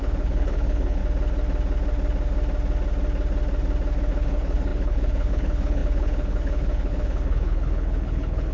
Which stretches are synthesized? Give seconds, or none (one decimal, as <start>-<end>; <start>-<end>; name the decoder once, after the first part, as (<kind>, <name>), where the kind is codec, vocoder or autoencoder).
0.0-1.0 (codec, HILCodec); 4.1-8.5